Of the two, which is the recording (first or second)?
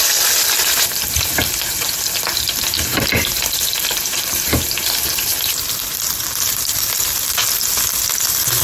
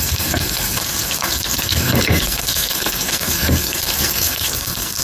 first